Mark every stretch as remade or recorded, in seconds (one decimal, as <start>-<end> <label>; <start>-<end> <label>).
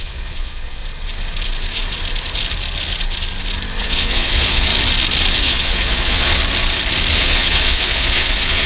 0.0-0.8 remade; 0.8-3.8 recorded; 3.8-4.7 remade; 4.7-5.4 recorded; 5.4-6.4 remade; 6.4-7.2 recorded; 7.2-8.7 remade